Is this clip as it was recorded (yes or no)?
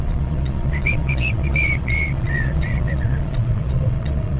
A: no